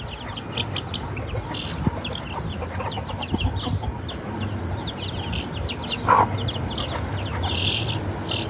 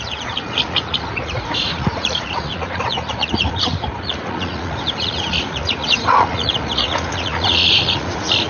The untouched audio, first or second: first